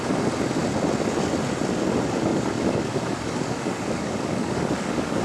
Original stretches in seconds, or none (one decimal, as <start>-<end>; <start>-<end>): 0.0-2.3